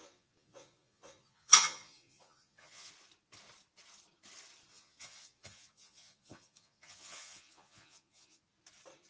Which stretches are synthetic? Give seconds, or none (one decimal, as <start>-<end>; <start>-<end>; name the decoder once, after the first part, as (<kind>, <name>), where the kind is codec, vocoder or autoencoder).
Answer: 0.0-2.9 (vocoder, Vocos); 4.7-8.4